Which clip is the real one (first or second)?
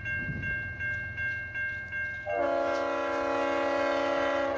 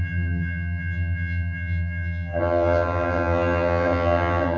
first